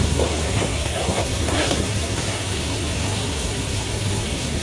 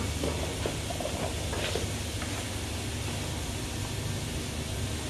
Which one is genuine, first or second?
second